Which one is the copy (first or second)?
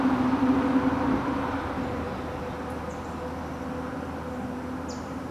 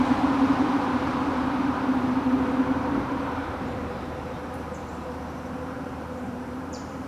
second